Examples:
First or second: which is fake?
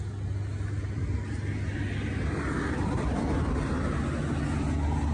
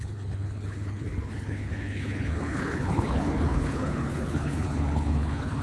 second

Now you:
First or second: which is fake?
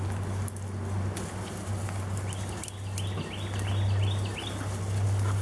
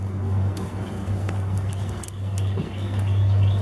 second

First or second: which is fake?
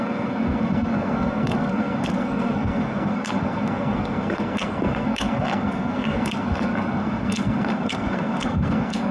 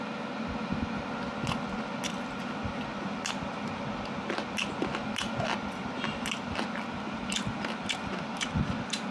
first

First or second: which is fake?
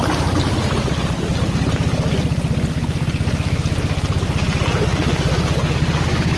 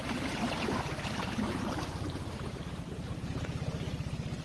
second